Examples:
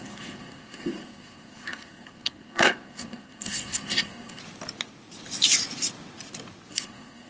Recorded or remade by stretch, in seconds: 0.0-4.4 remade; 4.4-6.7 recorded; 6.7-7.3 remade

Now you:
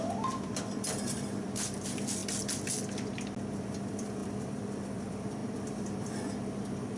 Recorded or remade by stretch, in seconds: 0.0-2.2 remade; 2.2-3.5 recorded; 3.5-7.0 remade

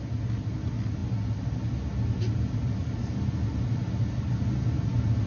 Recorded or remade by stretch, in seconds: 0.0-5.3 recorded

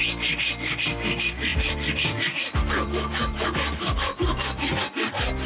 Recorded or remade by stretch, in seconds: 0.0-1.5 recorded; 1.5-4.8 remade; 4.8-5.5 recorded

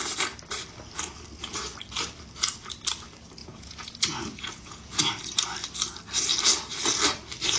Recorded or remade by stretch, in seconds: 0.0-3.4 recorded; 3.4-5.1 remade; 5.1-7.6 recorded

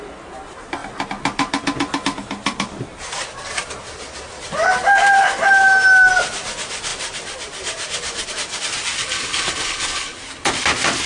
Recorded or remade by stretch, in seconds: 0.0-9.0 recorded; 9.0-10.2 remade; 10.2-11.1 recorded

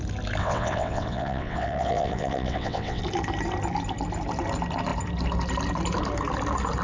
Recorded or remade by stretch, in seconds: 0.0-0.4 recorded; 0.4-3.0 remade; 3.0-6.8 recorded

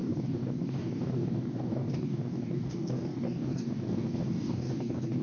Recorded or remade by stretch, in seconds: 0.0-5.2 remade